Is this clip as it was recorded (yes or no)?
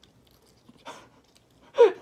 yes